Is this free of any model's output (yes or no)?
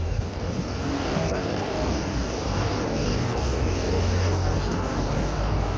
no